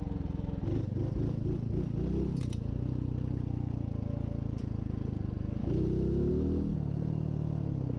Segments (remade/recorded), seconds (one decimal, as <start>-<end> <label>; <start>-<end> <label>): 0.0-5.6 recorded; 5.6-6.3 remade; 6.3-8.0 recorded